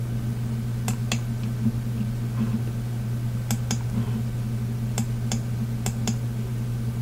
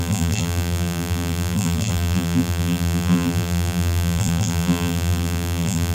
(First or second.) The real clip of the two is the first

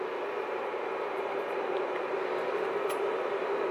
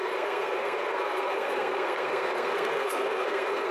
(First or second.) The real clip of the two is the first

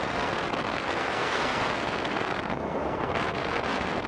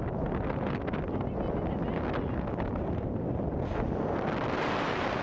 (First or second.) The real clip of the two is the second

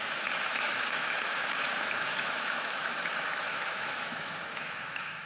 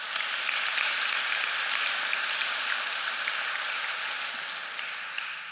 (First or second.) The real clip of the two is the second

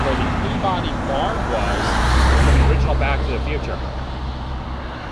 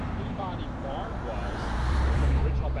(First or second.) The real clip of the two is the first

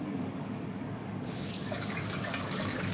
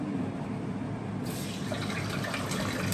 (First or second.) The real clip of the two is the second